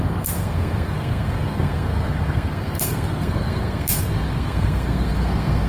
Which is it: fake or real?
fake